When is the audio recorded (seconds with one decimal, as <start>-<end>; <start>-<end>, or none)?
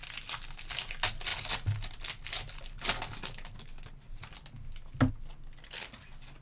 0.0-6.4